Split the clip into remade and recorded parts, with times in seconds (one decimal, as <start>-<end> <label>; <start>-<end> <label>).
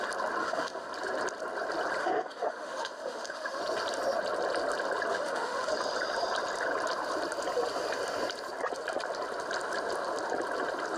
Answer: 0.0-0.4 recorded; 0.4-0.9 remade; 0.9-2.0 recorded; 2.0-3.6 remade; 3.6-5.1 recorded; 5.1-5.7 remade; 5.7-11.0 recorded